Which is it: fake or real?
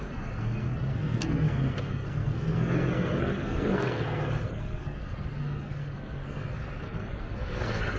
fake